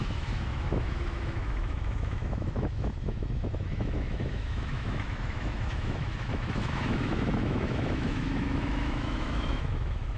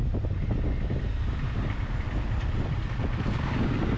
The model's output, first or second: first